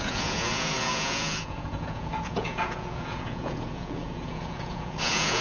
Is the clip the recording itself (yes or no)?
no